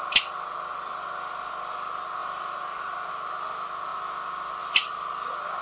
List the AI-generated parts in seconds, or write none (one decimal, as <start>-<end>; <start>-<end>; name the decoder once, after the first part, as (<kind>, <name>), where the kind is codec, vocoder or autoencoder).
none